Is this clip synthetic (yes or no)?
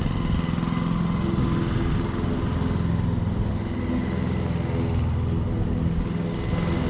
no